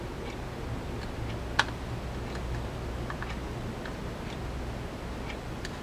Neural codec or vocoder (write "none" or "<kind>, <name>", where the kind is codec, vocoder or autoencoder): none